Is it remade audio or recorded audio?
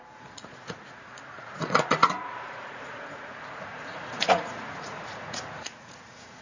remade